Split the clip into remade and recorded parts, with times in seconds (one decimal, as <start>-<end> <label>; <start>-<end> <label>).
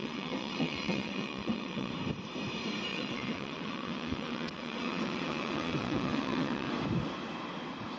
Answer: 0.0-1.9 remade; 1.9-2.9 recorded; 2.9-6.7 remade; 6.7-8.0 recorded